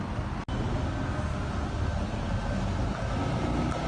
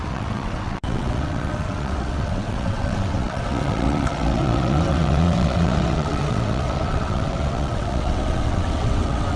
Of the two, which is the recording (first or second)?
first